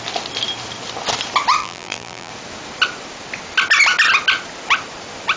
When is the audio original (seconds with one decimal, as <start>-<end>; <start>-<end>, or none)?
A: 0.0-1.6; 2.3-5.4